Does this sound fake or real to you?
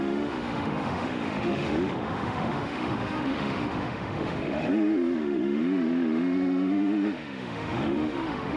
fake